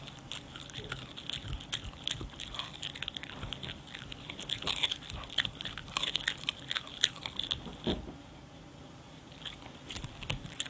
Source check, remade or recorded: recorded